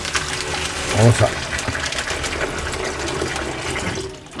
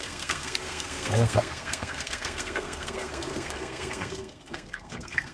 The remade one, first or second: second